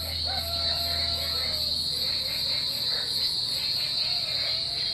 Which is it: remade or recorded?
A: recorded